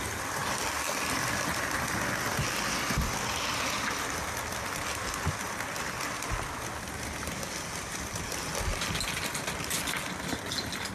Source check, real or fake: real